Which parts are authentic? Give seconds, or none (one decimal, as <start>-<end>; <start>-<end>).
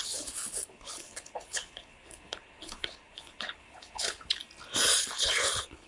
4.4-5.0